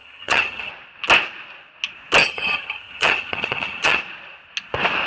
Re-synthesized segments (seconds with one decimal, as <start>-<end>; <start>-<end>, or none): 0.0-0.7; 2.2-4.0